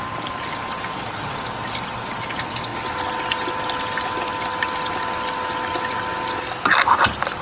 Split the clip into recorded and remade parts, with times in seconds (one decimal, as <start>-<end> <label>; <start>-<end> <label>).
0.0-7.4 recorded